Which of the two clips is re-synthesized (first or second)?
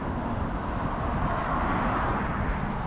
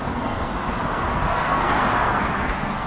second